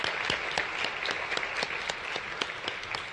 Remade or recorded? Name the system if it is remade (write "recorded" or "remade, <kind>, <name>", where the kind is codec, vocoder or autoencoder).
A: remade, vocoder, BigVGAN v2